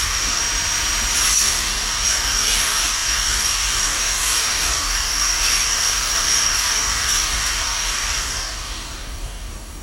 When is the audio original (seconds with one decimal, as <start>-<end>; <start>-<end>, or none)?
0.4-1.4